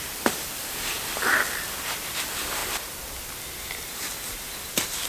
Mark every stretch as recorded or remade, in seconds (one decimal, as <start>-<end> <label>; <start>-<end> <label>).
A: 0.0-1.2 remade; 1.2-2.2 recorded; 2.2-2.6 remade; 2.6-3.6 recorded; 3.6-5.1 remade